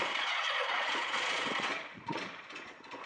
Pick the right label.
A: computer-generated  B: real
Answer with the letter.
A